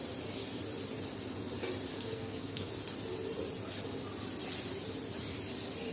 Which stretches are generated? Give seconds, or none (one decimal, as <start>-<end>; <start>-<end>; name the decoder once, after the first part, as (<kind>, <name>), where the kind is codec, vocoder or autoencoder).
1.9-2.7 (codec, SNAC)